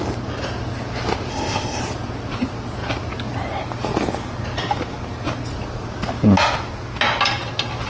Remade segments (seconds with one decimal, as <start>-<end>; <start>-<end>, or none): 1.3-1.8